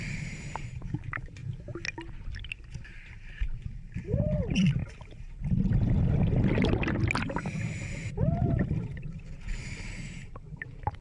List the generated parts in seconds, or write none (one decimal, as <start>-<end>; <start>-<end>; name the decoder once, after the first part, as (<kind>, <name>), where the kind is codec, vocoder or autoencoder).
0.0-1.4 (vocoder, BigVGAN v2); 2.9-4.8; 8.8-11.0